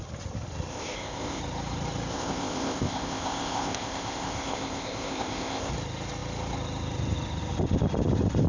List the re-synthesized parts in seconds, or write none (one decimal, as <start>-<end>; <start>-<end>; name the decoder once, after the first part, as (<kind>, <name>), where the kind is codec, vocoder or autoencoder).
0.7-1.4 (codec, ZipCodec); 2.1-5.7